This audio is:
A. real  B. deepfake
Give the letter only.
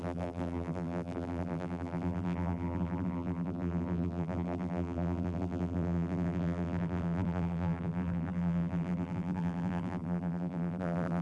B